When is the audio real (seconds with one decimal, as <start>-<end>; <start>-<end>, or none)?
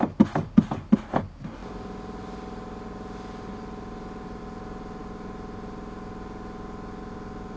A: 0.0-7.6